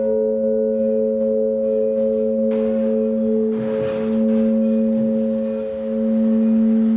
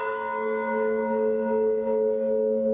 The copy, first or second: second